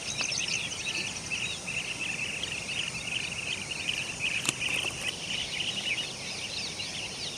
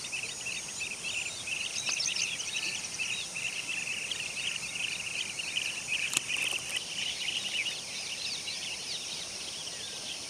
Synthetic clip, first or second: second